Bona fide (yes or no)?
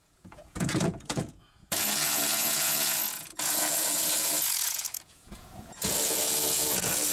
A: no